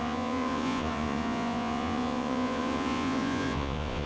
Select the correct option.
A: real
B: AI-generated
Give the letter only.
B